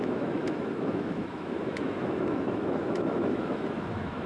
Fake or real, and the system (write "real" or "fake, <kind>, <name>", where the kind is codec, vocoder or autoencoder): fake, autoencoder, DAC-VAE